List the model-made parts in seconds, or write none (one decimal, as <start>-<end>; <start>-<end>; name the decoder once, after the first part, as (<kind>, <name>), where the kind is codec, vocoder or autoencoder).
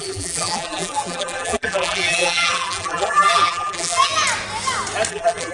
0.0-4.1 (vocoder, BigVGAN v2); 5.1-5.5